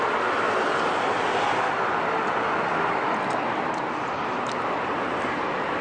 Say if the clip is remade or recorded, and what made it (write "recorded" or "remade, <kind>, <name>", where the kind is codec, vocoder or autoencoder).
recorded